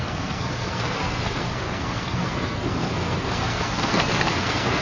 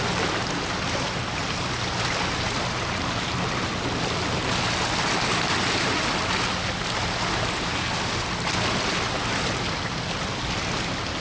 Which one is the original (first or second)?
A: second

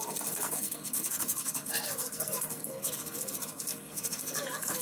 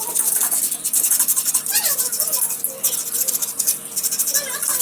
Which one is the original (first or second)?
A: second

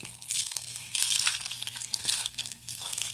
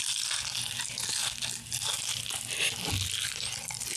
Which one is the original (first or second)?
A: second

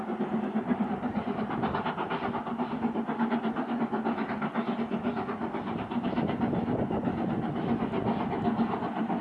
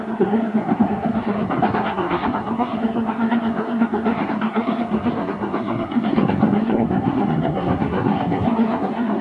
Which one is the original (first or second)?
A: first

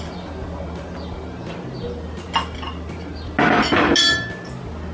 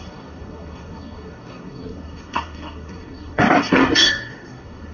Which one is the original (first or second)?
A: first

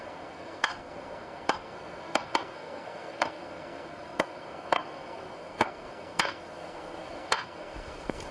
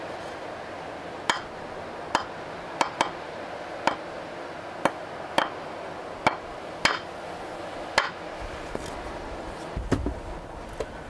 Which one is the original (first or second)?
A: second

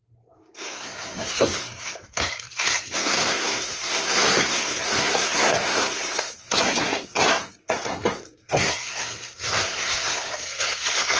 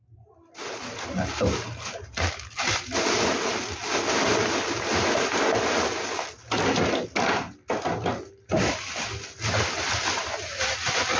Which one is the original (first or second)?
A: second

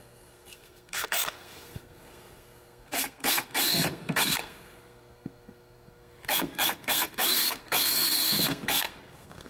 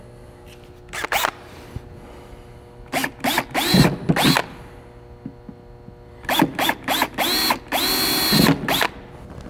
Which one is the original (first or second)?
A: second